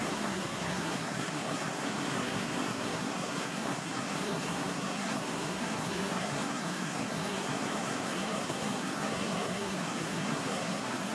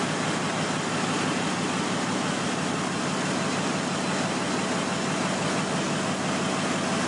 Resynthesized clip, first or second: first